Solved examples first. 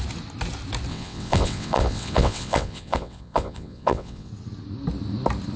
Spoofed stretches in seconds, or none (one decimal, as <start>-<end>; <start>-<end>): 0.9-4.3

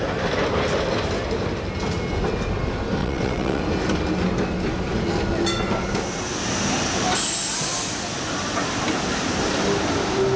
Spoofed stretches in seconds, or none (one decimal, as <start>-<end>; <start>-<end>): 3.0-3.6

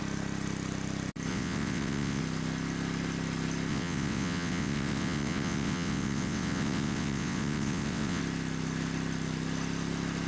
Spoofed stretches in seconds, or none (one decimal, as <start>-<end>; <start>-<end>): 1.3-2.2; 3.7-8.2

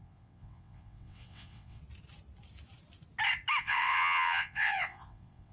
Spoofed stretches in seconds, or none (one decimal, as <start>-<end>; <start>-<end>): 0.0-1.8; 3.6-5.5